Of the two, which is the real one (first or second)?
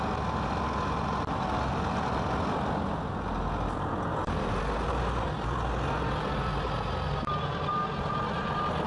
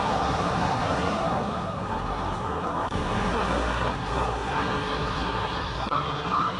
first